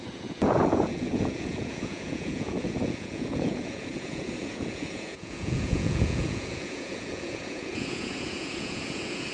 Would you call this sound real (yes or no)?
no